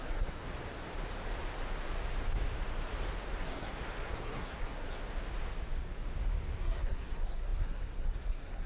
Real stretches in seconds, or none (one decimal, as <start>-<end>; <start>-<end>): 0.5-3.4; 5.0-6.6